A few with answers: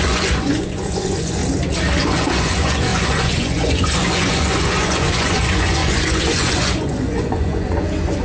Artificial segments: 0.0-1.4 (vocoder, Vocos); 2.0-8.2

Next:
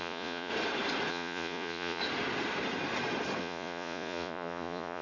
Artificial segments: 0.0-0.5 (vocoder, Vocos); 1.1-2.0; 3.4-5.0

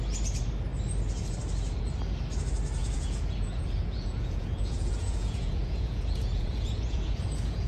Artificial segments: 2.8-7.7 (vocoder, Vocos)

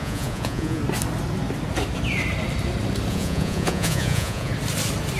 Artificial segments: 0.0-0.8 (vocoder, Vocos); 3.1-4.5

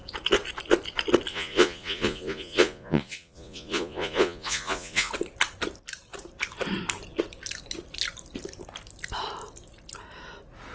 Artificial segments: 1.3-5.1 (vocoder, Vocos)

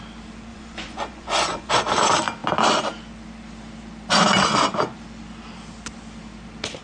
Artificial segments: 0.5-1.7 (vocoder, Vocos)

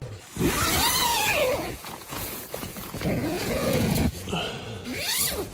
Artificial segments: 1.0-4.3 (vocoder, Vocos)